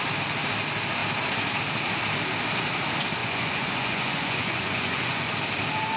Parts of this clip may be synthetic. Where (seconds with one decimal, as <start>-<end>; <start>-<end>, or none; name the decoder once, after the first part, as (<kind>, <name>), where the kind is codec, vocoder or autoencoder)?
3.2-5.3 (vocoder, Vocos)